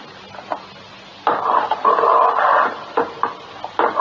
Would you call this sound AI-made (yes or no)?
no